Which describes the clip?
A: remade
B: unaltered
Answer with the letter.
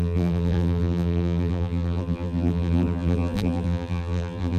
A